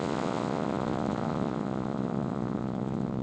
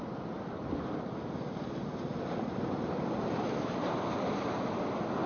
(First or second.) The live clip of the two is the second